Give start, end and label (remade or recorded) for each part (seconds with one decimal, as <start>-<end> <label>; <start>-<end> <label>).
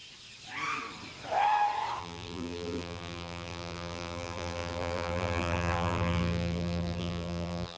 0.0-2.0 recorded; 2.0-7.8 remade